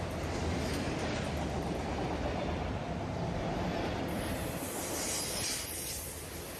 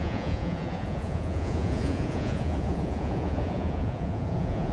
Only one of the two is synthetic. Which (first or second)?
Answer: second